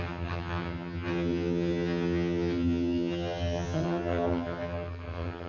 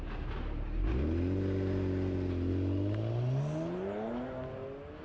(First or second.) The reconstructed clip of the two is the first